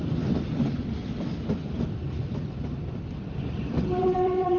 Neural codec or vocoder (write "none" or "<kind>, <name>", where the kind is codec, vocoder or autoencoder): vocoder, BigVGAN v2